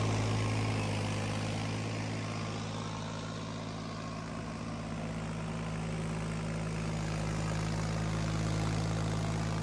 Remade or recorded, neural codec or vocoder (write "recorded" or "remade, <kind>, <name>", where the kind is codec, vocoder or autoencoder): recorded